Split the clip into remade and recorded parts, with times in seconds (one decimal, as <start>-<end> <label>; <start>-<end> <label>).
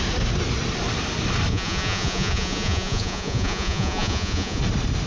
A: 0.0-1.5 recorded; 1.5-4.6 remade; 4.6-5.1 recorded